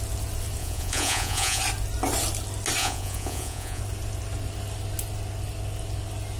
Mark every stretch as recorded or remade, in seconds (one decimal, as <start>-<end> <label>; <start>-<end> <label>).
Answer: 0.0-0.6 recorded; 0.6-1.6 remade; 1.6-2.8 recorded; 2.8-3.8 remade; 3.8-6.4 recorded